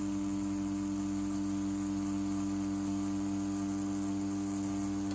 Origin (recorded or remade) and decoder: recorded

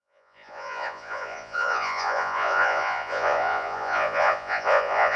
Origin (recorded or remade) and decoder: remade, vocoder, Vocos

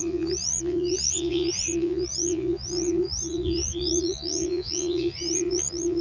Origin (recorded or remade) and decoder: remade, vocoder, Vocos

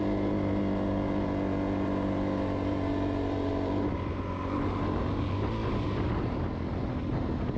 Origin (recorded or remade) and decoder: recorded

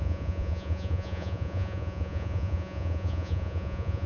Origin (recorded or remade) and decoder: remade, vocoder, Vocos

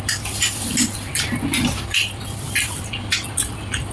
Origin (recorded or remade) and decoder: recorded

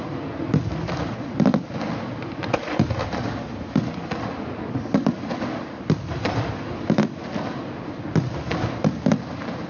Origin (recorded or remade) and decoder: recorded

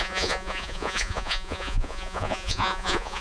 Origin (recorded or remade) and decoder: remade, vocoder, Vocos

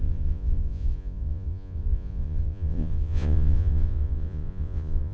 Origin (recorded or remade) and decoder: remade, vocoder, Vocos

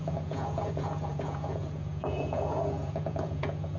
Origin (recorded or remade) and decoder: remade, vocoder, Vocos